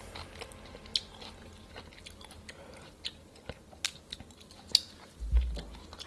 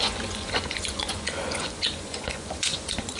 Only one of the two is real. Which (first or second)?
first